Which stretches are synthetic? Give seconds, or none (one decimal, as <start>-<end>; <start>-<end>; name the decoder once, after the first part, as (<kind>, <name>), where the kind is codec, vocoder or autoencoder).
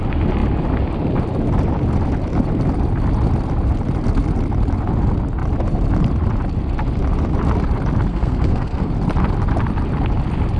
8.1-8.9 (codec, SNAC)